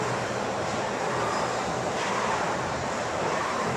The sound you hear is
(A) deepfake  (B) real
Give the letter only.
A